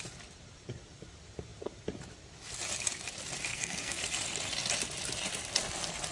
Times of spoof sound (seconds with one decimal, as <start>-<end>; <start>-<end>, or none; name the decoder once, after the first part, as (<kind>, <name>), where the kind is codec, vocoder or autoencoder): 3.5-4.0 (codec, SNAC)